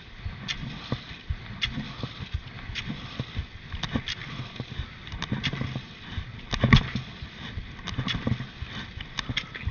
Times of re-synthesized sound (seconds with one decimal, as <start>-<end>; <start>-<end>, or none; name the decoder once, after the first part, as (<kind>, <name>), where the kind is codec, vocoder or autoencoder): none

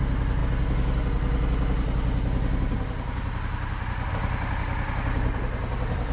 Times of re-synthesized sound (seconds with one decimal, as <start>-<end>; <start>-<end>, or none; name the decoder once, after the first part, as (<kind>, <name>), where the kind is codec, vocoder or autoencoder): none

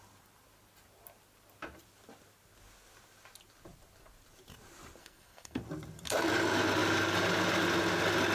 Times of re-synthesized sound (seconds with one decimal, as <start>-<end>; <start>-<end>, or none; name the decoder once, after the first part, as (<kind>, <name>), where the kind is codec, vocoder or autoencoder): 5.0-5.6 (codec, SNAC)

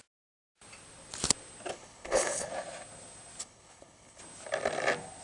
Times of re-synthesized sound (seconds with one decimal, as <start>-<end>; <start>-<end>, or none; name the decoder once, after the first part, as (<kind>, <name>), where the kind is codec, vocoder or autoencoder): 1.7-2.5 (codec, HILCodec); 3.4-4.2

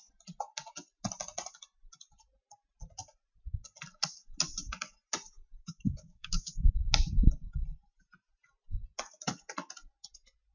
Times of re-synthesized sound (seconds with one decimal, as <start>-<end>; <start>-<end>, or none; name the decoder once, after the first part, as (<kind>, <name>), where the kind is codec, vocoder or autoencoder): 5.6-6.7 (autoencoder, DAC-VAE)

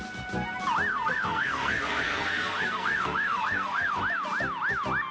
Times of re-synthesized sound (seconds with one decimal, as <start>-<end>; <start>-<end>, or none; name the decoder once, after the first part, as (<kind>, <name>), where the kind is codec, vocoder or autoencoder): 0.9-4.0 (codec, SNAC)

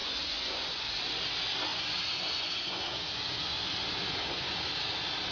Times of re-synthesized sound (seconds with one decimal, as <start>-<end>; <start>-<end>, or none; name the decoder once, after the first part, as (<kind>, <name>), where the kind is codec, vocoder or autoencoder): 0.0-1.0 (vocoder, Vocos); 1.7-4.7